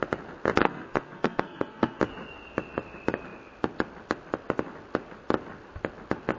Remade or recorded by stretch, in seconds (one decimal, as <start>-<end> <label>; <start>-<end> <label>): 0.0-0.6 recorded; 0.6-2.0 remade; 2.0-6.4 recorded